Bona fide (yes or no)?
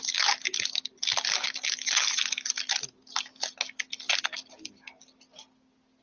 yes